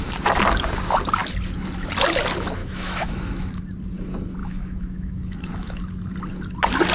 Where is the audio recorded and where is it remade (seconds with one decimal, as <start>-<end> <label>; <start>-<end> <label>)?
0.0-2.6 recorded; 2.6-3.5 remade; 3.5-4.4 recorded; 4.4-5.8 remade; 5.8-6.9 recorded